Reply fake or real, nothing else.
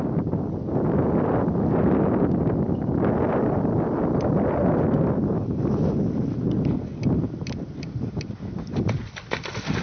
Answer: real